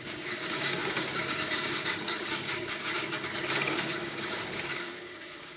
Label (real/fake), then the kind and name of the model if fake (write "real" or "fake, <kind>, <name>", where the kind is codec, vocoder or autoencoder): fake, codec, DAC